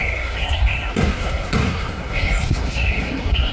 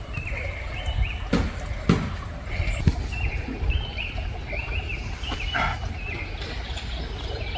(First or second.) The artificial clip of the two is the first